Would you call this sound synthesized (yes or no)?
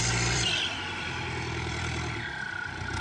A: yes